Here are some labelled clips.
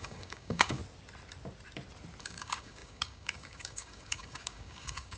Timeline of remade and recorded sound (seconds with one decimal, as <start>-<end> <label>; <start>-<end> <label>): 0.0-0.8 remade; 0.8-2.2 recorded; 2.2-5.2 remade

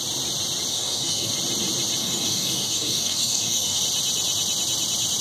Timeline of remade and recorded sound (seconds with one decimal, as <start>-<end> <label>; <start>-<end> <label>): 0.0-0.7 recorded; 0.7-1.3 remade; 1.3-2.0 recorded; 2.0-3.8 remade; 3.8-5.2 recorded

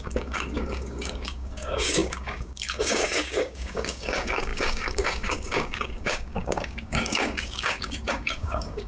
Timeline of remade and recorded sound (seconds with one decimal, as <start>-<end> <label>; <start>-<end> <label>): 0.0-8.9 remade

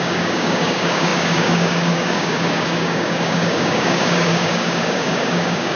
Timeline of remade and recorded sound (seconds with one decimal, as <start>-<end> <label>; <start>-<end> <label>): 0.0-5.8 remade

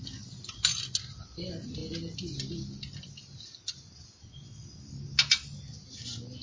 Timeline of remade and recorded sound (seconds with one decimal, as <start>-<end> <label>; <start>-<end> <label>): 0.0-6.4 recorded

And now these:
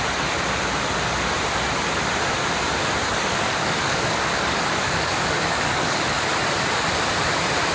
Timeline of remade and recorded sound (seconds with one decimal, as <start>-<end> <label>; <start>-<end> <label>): 0.0-3.1 recorded; 3.1-6.3 remade; 6.3-7.7 recorded

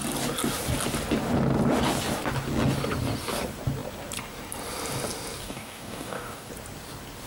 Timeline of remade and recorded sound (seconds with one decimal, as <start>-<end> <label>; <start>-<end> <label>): 0.0-5.4 recorded; 5.4-6.5 remade; 6.5-7.3 recorded